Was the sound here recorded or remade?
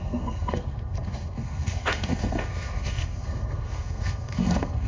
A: remade